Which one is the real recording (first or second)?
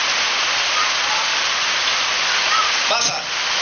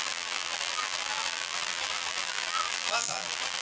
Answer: first